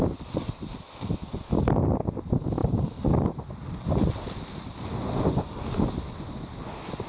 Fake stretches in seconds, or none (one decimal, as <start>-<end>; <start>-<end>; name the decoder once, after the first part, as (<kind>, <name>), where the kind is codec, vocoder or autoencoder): none

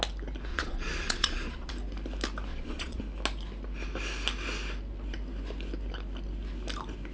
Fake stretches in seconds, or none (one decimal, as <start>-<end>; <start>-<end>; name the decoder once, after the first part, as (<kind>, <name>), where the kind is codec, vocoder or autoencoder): 0.5-1.7 (vocoder, Vocos); 2.5-3.0

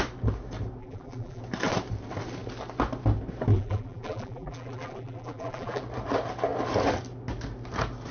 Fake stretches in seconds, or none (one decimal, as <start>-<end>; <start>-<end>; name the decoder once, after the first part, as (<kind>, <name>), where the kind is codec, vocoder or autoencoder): 0.8-1.4 (vocoder, BigVGAN v2); 3.5-5.8